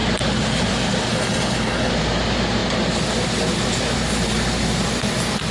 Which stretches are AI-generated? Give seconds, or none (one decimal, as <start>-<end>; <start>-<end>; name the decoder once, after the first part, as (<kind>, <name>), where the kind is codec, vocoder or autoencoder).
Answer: 1.1-1.9 (codec, HILCodec)